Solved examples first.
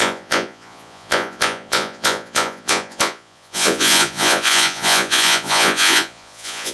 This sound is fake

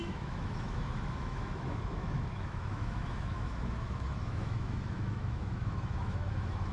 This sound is fake